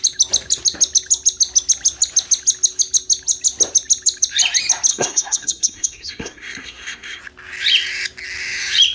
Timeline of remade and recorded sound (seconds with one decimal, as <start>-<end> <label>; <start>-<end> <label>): 0.0-4.9 recorded; 4.9-7.2 remade; 7.2-8.9 recorded